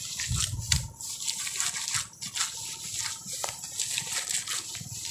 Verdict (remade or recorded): recorded